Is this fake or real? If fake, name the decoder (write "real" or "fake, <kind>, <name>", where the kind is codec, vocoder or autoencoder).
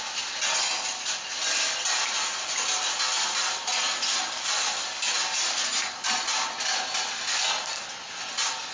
real